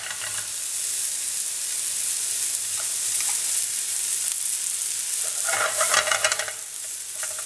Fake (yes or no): no